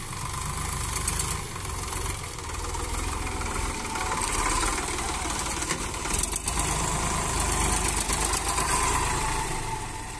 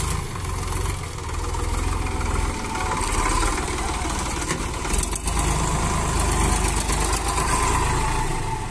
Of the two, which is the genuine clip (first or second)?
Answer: second